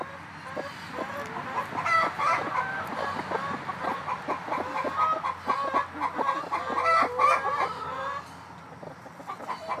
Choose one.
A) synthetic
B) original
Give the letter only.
B